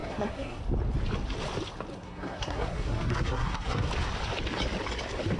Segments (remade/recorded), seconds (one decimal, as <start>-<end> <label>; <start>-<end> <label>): 0.0-0.6 remade; 0.6-1.9 recorded; 1.9-3.9 remade; 3.9-5.4 recorded